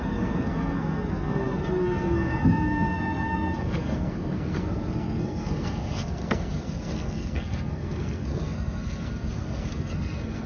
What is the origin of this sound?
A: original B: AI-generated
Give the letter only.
B